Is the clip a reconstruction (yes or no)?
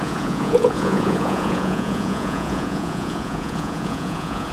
yes